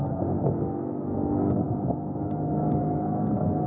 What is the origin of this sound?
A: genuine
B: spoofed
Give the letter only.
B